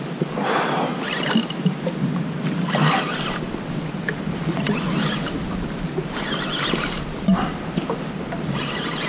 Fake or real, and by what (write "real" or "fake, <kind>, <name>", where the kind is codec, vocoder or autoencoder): real